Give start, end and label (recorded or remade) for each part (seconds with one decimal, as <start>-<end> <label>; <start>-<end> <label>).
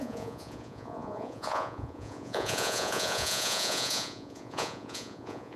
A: 0.0-5.6 remade